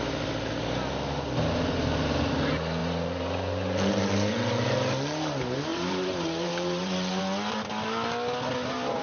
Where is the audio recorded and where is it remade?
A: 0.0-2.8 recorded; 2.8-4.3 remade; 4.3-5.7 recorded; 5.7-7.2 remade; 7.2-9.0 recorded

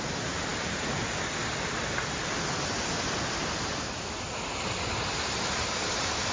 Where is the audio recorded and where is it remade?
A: 0.0-6.3 recorded